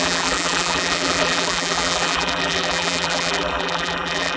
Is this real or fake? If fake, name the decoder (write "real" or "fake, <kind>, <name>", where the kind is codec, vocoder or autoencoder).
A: fake, vocoder, BigVGAN v2